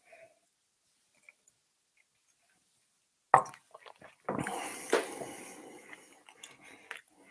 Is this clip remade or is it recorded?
recorded